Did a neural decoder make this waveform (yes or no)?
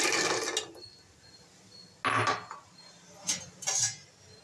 no